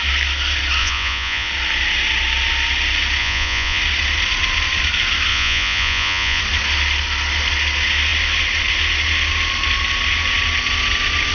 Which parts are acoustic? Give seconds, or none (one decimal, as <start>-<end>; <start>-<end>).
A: 0.0-0.8; 1.5-3.2; 3.8-5.3; 6.4-11.3